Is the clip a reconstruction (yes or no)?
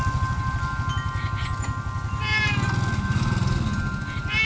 no